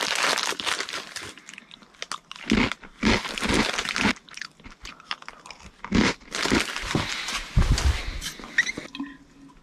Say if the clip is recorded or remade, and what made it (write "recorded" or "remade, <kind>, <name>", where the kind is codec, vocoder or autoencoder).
recorded